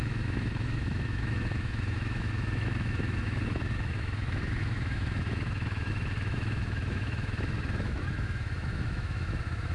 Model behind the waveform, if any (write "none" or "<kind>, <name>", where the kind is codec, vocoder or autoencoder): autoencoder, DAC-VAE